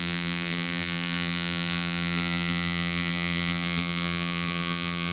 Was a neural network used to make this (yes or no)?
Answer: yes